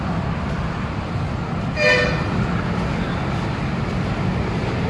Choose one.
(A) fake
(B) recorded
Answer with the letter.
B